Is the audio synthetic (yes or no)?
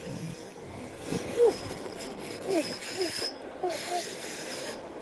yes